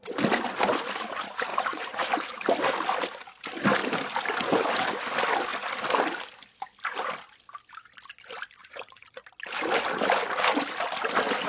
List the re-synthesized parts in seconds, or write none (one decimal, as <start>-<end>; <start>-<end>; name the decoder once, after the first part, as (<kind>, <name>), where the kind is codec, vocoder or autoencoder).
1.5-2.1 (vocoder, Vocos); 8.6-9.2